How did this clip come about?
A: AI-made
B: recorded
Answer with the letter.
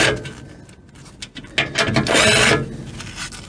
B